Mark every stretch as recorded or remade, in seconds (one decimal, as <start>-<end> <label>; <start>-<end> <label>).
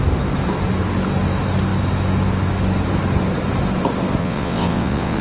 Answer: 0.0-4.2 recorded; 4.2-5.2 remade